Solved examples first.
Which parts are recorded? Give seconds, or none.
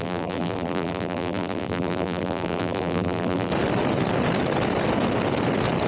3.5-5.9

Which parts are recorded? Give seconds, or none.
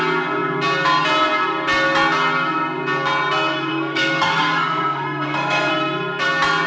0.0-3.7; 5.7-6.7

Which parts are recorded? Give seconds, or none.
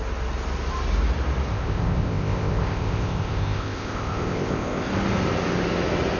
0.0-1.5; 4.9-6.2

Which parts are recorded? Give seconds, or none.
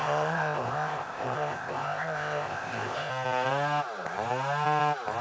3.1-5.2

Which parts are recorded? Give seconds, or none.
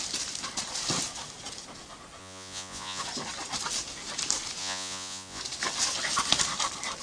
0.0-2.2; 3.0-4.6; 5.4-7.0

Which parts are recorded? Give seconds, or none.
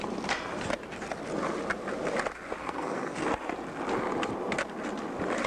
0.0-2.6; 3.2-5.5